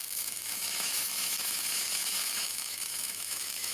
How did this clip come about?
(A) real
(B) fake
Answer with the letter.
B